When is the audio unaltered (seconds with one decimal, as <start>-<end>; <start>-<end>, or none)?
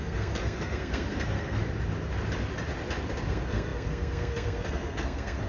1.6-3.3